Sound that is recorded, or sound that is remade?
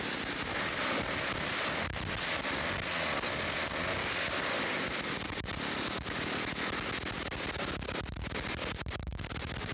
recorded